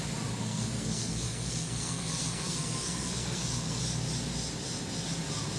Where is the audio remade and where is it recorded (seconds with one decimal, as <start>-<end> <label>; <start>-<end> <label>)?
0.0-0.4 recorded; 0.4-3.8 remade; 3.8-5.6 recorded